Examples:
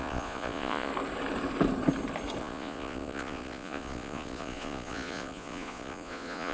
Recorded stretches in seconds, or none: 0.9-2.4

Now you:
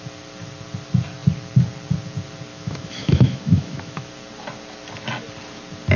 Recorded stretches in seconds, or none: 0.0-2.5; 4.1-6.0

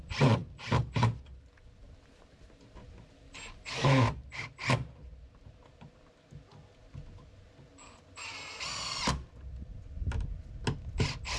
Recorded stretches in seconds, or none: 0.0-11.4

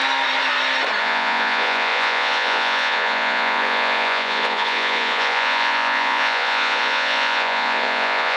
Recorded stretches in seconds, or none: 0.0-1.0

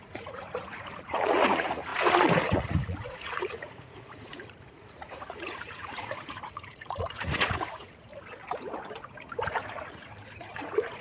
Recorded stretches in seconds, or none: 8.1-10.4

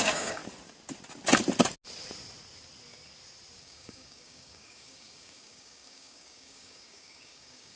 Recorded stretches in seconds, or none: 0.4-3.6

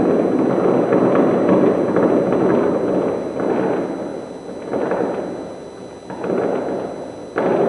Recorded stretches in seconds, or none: 0.0-7.7